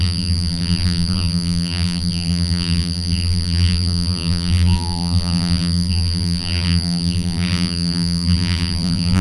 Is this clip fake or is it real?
fake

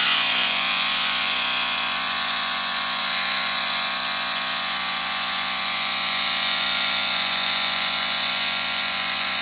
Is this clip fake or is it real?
fake